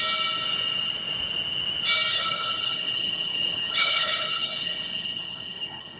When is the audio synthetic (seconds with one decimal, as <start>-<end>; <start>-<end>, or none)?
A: 2.1-6.0